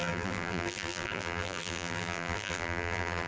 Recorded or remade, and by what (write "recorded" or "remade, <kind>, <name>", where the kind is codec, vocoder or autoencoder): remade, vocoder, BigVGAN v2